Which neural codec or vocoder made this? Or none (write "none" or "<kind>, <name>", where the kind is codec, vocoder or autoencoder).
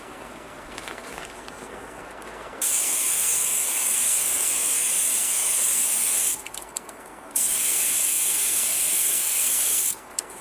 codec, SNAC